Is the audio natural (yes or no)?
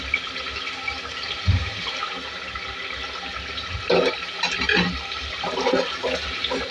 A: yes